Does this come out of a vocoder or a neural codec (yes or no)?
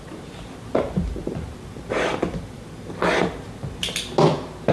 no